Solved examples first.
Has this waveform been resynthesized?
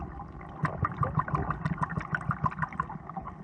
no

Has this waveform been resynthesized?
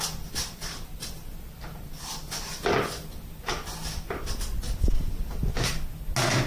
no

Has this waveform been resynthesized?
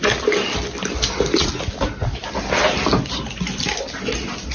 no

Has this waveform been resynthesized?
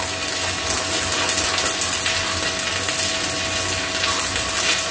no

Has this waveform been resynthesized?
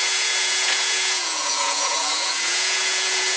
yes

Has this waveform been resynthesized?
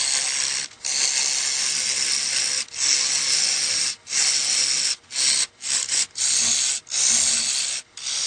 no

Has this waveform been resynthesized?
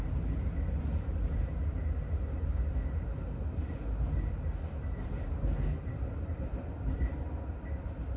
no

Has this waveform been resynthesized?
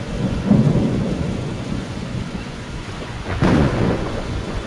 yes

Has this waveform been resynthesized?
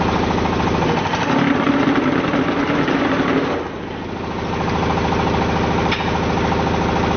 no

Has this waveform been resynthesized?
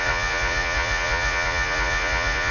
yes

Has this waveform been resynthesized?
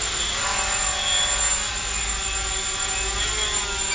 no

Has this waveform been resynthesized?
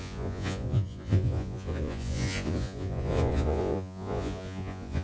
yes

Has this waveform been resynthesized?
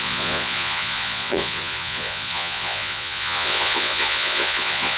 yes